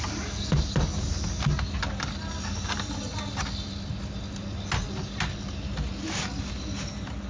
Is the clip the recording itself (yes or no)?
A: yes